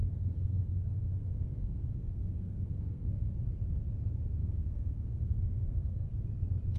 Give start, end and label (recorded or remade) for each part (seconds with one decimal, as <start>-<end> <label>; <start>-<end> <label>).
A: 0.0-3.3 remade; 3.3-4.4 recorded; 4.4-6.1 remade; 6.1-6.8 recorded